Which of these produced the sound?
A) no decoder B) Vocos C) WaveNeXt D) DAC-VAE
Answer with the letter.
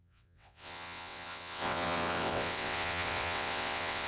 C